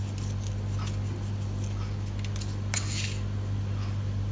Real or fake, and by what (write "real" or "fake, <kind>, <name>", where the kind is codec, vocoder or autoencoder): real